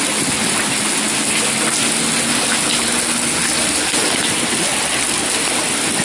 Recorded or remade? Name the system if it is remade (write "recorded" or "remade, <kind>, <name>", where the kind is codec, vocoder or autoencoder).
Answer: recorded